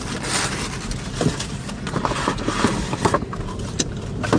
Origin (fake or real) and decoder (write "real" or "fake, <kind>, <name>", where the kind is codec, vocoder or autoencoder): real